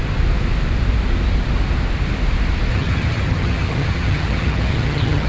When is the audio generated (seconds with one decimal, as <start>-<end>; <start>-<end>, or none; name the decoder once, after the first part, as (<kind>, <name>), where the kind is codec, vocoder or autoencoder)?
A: 2.7-5.3 (vocoder, HiFi-GAN)